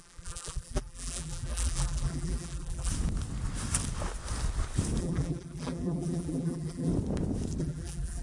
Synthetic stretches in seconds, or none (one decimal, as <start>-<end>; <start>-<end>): 0.0-2.9; 5.0-6.9; 7.6-8.2